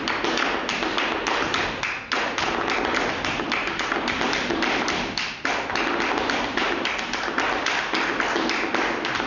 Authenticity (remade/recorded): recorded